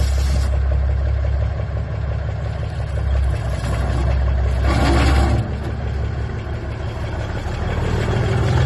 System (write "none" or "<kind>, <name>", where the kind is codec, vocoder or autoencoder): none